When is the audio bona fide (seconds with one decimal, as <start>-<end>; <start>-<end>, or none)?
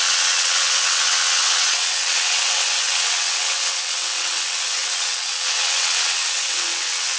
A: none